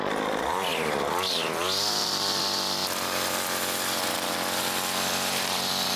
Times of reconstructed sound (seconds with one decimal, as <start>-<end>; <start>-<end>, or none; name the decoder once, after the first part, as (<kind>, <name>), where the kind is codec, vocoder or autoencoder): 0.0-6.0 (vocoder, BigVGAN v2)